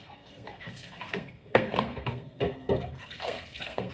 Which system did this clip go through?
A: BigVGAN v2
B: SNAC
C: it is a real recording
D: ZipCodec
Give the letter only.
B